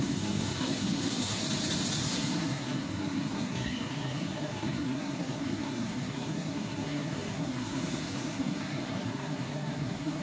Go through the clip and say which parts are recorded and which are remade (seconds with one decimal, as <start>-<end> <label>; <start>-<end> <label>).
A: 0.0-1.4 remade; 1.4-2.0 recorded; 2.0-10.2 remade